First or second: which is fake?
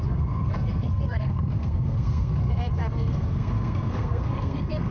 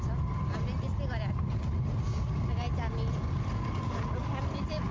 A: first